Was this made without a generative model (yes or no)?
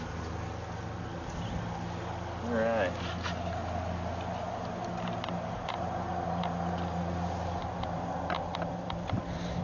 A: yes